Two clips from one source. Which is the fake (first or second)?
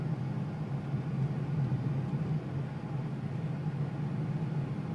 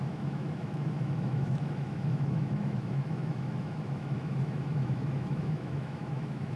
second